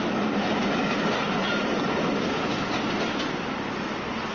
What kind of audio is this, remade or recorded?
recorded